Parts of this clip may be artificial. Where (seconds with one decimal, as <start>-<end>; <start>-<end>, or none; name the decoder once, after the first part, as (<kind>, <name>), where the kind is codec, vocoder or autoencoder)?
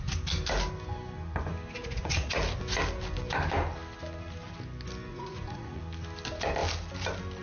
1.8-2.4 (vocoder, Vocos); 5.1-5.8